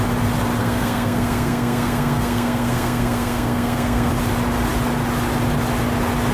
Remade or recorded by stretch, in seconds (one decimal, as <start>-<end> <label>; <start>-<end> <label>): 0.0-0.6 recorded; 0.6-4.1 remade; 4.1-6.3 recorded